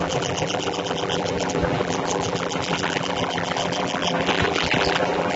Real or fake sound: fake